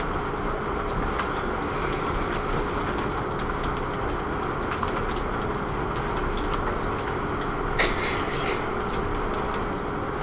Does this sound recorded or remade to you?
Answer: recorded